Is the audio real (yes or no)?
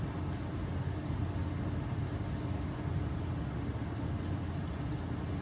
yes